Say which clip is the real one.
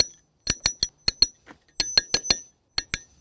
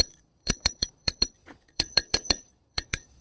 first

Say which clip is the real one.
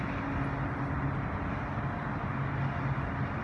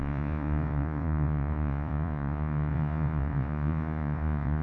first